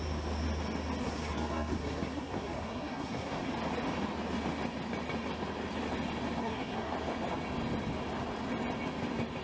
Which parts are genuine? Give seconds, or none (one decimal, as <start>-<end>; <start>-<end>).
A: 0.0-1.0; 3.5-6.4; 6.9-9.4